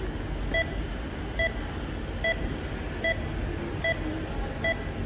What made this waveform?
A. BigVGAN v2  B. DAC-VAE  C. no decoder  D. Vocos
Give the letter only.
C